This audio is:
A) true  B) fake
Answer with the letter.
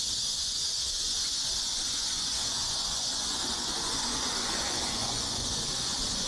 B